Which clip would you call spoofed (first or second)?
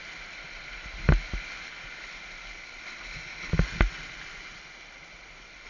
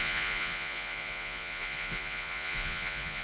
second